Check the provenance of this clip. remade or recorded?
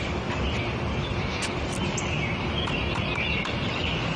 recorded